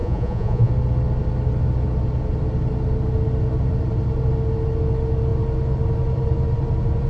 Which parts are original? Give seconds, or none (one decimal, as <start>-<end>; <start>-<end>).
0.7-7.1